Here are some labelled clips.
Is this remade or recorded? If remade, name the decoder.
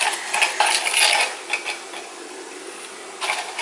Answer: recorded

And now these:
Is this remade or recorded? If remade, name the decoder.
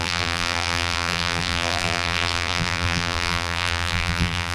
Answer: remade, vocoder, BigVGAN v2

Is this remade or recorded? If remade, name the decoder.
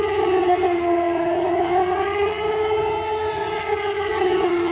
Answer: remade, vocoder, HiFi-GAN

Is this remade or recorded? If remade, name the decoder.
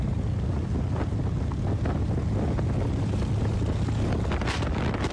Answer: recorded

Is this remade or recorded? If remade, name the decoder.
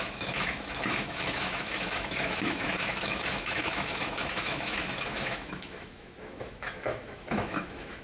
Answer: remade, autoencoder, DAC-VAE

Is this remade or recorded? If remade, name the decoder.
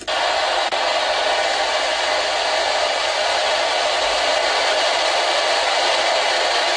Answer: recorded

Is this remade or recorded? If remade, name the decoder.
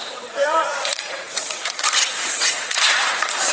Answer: remade, vocoder, Vocos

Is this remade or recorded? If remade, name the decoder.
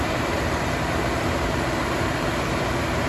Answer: remade, vocoder, BigVGAN v2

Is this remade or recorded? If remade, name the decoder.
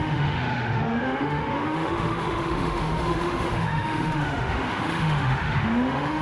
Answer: remade, autoencoder, DAC-VAE